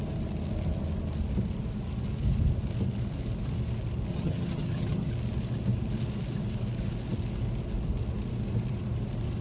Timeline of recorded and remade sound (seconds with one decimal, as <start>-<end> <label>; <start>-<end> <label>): 0.0-4.1 recorded; 4.1-5.1 remade; 5.1-9.4 recorded